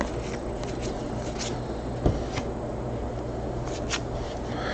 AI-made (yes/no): no